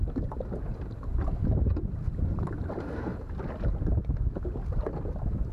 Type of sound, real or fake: real